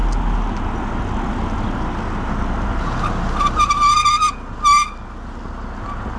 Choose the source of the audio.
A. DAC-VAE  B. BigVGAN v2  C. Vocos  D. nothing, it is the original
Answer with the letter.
D